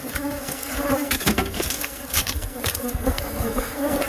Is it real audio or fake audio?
fake